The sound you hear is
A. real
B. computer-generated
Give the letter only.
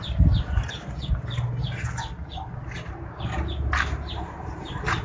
A